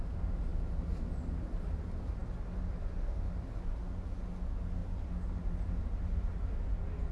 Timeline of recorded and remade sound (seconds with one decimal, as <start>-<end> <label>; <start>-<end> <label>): 0.0-7.1 recorded